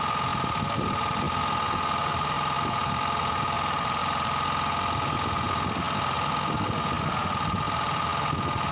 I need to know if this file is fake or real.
real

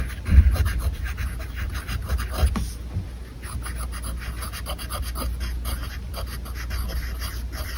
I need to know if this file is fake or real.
real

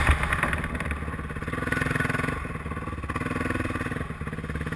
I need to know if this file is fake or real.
real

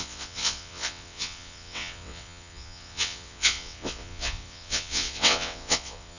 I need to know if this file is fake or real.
fake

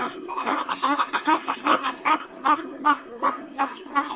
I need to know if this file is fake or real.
fake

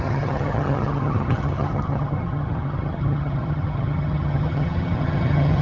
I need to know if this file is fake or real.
fake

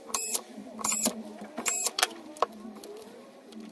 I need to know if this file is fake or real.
fake